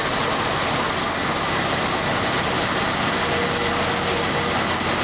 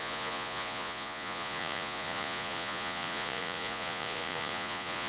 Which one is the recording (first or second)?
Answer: first